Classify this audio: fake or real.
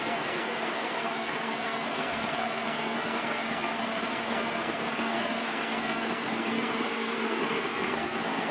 fake